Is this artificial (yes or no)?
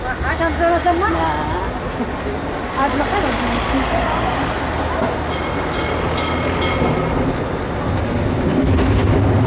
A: no